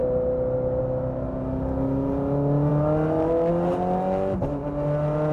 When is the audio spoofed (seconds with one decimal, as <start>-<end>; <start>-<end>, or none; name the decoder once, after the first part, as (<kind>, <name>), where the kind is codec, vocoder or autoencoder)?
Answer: none